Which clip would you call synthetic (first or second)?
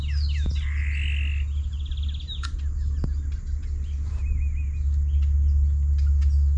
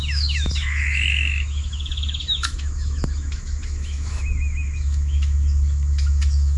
second